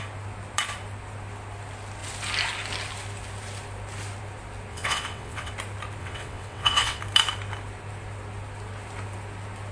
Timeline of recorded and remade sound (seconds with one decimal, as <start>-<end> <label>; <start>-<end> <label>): 0.0-4.7 recorded; 4.7-5.5 remade; 5.5-6.0 recorded; 6.0-7.0 remade; 7.0-9.7 recorded